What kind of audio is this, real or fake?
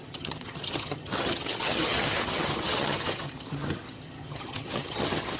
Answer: fake